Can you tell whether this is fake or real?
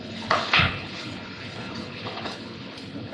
fake